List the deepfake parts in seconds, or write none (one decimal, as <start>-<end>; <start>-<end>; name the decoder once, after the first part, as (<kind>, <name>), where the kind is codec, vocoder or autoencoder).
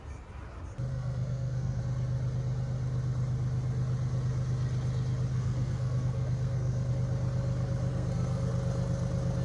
0.9-1.8 (codec, SNAC); 5.3-6.9; 7.9-8.5